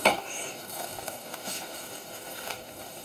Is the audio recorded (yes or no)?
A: no